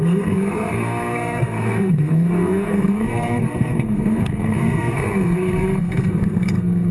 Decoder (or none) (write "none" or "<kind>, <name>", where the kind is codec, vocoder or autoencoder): codec, SNAC